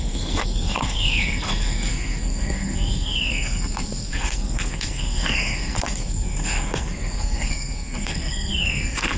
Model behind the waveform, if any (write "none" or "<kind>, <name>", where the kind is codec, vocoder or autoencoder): codec, SNAC